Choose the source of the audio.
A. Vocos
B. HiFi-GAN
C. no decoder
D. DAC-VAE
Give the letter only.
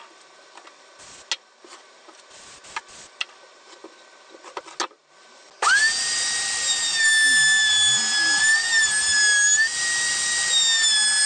C